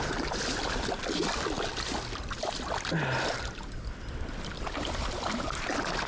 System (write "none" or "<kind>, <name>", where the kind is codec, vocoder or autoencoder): none